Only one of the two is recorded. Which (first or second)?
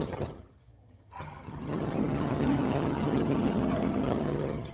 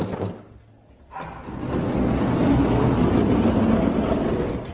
second